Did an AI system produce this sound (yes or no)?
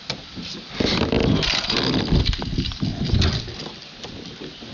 no